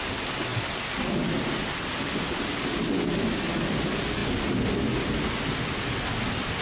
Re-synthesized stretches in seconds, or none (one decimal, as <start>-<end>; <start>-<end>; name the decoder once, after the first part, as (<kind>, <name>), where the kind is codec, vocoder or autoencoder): none